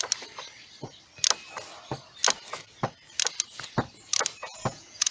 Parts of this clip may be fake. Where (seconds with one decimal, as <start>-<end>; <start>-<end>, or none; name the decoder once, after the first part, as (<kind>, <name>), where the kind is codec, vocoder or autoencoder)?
4.4-5.1 (vocoder, Vocos)